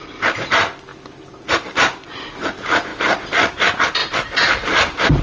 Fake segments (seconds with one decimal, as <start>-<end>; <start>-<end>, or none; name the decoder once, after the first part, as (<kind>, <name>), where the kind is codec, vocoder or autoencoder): 4.0-5.2 (vocoder, BigVGAN v2)